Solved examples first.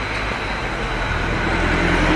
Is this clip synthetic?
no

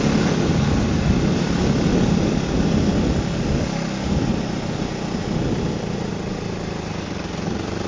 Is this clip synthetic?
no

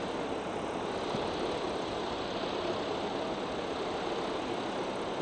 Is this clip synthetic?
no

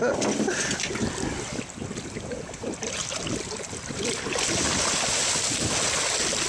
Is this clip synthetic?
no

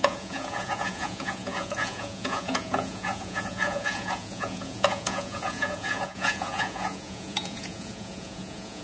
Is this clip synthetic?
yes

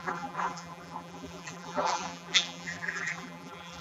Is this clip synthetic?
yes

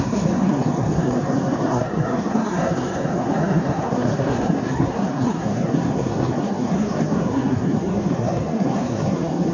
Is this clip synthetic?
yes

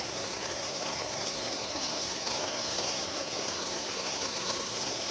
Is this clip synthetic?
yes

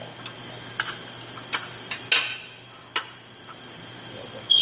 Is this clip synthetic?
no